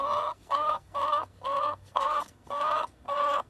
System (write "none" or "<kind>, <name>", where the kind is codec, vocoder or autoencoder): codec, SNAC